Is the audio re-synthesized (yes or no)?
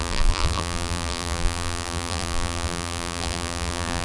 yes